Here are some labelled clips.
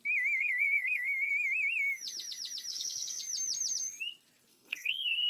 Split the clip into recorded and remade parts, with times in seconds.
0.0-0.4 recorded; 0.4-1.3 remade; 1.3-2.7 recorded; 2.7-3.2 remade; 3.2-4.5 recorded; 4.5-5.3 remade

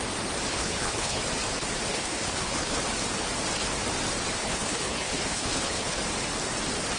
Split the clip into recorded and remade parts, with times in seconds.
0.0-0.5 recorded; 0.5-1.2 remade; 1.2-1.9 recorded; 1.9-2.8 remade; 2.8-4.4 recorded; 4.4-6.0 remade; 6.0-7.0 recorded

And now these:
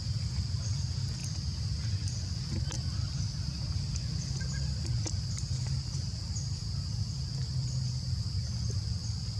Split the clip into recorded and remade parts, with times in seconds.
0.0-1.2 remade; 1.2-3.8 recorded; 3.8-9.4 remade